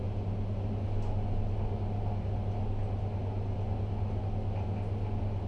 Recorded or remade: recorded